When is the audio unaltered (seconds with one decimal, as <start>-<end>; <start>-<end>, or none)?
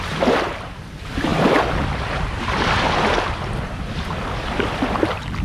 0.0-5.4